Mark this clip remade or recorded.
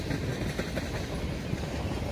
recorded